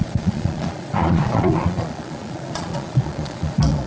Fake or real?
fake